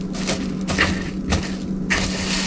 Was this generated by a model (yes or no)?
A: no